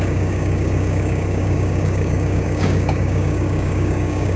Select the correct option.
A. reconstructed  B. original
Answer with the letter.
A